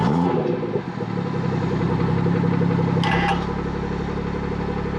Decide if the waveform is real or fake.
real